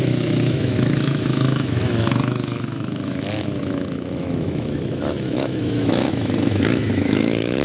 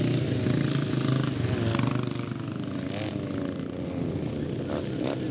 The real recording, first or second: second